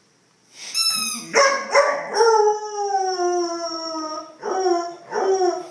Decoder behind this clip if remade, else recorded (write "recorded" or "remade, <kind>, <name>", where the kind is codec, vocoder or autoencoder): recorded